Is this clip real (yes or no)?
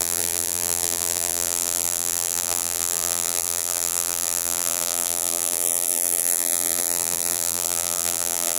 no